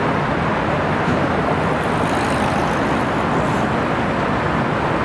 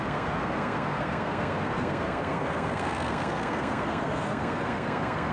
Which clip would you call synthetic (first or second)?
second